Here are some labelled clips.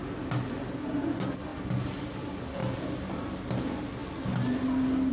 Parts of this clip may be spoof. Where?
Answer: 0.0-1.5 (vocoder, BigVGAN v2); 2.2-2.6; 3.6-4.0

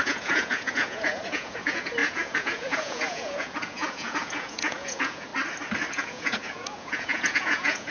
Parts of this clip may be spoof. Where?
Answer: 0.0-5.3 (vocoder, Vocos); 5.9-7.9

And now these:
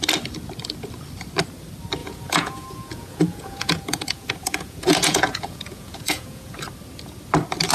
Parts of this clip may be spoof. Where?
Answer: 2.0-6.6 (vocoder, Vocos)

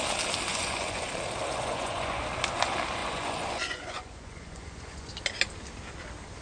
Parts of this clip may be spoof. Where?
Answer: 0.5-1.1 (vocoder, Vocos); 1.5-2.2; 3.0-5.1

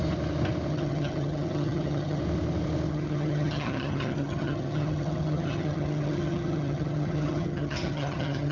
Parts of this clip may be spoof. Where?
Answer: 0.7-2.2 (vocoder, HiFi-GAN); 2.9-8.5